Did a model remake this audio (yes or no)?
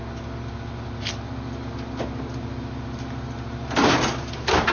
no